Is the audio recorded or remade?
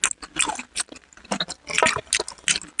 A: recorded